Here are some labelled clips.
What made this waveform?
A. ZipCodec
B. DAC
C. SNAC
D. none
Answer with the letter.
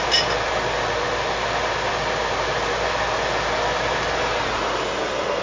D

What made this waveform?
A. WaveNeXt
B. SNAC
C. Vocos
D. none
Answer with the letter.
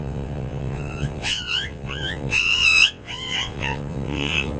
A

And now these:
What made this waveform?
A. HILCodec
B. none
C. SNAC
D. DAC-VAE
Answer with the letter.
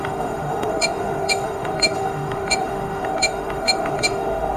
D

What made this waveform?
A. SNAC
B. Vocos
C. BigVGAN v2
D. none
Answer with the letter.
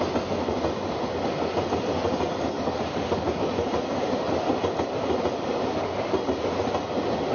D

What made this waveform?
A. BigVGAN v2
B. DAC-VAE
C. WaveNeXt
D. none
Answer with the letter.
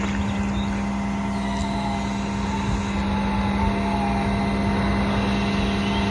D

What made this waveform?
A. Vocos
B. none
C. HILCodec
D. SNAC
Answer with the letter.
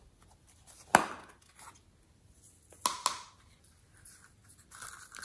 B